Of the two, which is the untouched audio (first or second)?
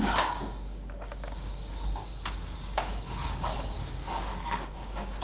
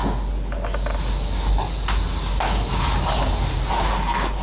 second